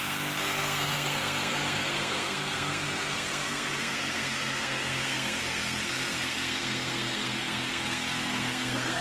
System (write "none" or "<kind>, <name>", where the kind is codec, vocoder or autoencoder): codec, SNAC